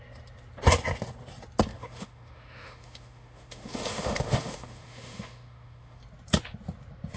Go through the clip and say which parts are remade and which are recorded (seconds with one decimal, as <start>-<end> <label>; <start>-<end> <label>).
0.0-1.7 recorded; 1.7-6.0 remade; 6.0-7.2 recorded